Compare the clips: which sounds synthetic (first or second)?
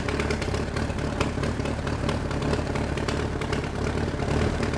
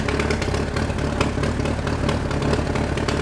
first